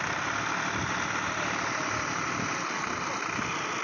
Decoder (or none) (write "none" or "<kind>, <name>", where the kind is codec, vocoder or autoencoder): none